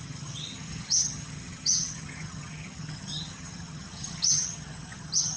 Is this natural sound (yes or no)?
no